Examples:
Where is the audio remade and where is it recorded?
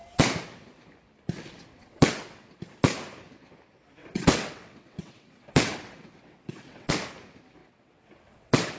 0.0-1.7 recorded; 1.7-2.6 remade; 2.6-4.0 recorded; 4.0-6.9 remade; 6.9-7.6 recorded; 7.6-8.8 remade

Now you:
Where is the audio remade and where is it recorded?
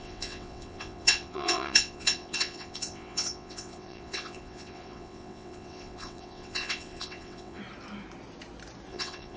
0.0-7.6 remade; 7.6-8.9 recorded; 8.9-9.4 remade